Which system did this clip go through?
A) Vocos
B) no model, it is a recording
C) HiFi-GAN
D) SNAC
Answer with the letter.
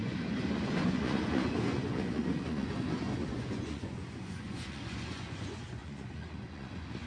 A